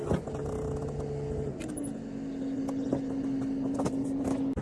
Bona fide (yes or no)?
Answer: yes